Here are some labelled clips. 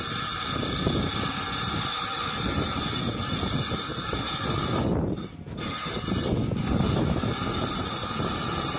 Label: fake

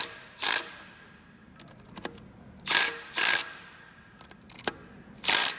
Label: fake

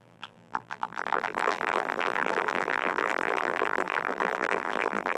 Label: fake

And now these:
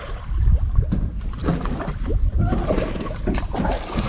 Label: real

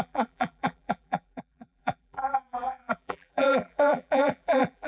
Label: fake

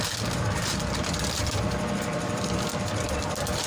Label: fake